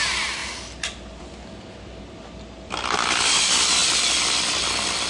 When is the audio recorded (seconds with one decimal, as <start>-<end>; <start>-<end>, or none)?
0.0-5.1